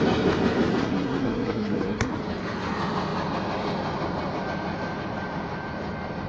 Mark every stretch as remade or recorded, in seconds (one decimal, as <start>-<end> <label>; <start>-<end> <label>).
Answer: 0.0-0.8 recorded; 0.8-2.1 remade; 2.1-6.3 recorded